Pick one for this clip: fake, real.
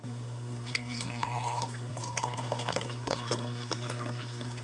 fake